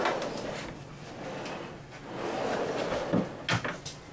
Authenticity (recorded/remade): recorded